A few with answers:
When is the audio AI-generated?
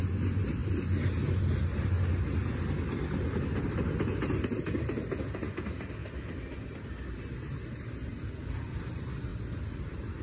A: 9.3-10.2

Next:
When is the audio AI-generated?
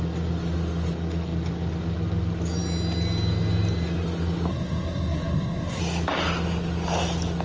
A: 4.5-5.8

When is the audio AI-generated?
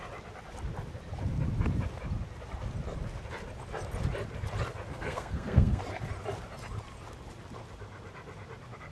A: 4.9-5.8